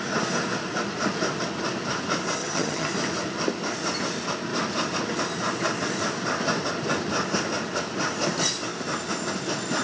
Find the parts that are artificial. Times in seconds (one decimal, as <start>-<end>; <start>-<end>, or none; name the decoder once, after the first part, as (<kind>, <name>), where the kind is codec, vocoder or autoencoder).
2.4-2.9 (vocoder, HiFi-GAN)